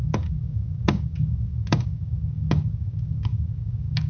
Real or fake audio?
fake